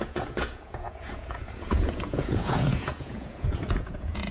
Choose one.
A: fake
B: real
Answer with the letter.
A